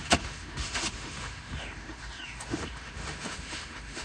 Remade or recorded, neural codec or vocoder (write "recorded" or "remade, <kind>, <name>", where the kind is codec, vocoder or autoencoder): remade, autoencoder, DAC-VAE